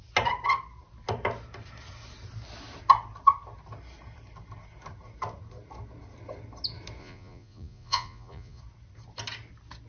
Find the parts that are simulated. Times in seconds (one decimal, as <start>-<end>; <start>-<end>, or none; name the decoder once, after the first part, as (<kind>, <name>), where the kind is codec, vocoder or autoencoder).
7.0-8.6 (vocoder, Vocos)